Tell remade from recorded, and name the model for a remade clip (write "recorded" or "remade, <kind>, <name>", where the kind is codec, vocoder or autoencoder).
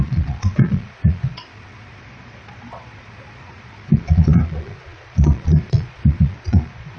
remade, vocoder, Vocos